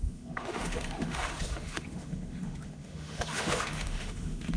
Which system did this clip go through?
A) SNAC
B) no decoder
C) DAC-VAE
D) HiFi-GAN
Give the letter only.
C